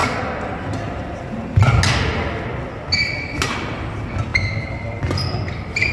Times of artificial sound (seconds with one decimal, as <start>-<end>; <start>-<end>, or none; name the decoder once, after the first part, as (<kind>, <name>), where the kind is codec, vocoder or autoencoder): 4.3-5.9 (vocoder, BigVGAN v2)